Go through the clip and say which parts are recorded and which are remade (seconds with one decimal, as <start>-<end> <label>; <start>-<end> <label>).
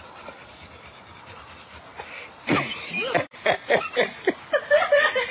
0.0-5.3 recorded